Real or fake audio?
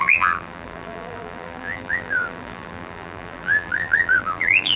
fake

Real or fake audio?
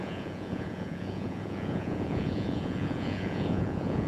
fake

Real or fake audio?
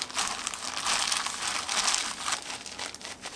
real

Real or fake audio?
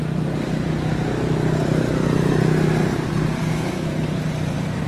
real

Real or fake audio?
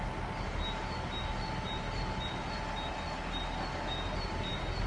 real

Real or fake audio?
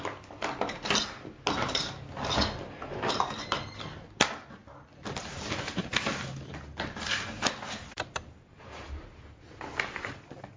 real